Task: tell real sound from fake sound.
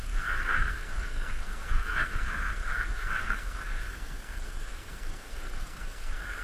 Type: fake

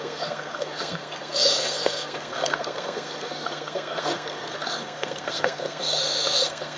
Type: fake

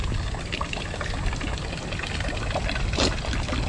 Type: real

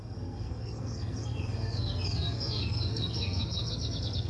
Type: fake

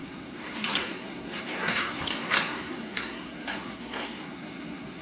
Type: fake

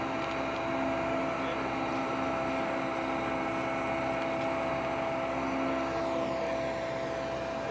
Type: real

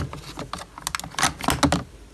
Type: real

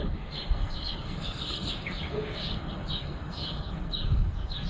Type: fake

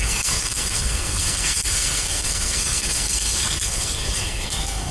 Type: fake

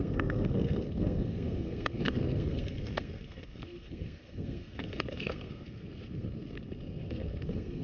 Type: fake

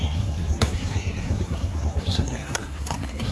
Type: fake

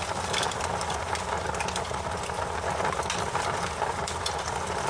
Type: real